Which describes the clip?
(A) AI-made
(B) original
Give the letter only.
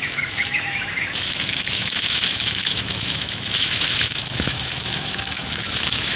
A